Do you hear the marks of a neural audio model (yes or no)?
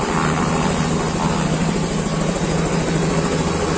no